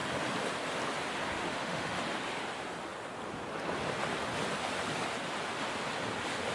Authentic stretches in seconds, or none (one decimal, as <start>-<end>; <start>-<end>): 0.0-1.4; 2.0-6.5